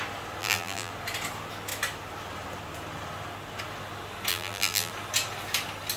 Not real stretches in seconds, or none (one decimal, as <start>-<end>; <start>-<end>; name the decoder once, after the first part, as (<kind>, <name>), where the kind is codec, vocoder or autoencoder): 0.4-0.9 (vocoder, BigVGAN v2); 4.3-4.9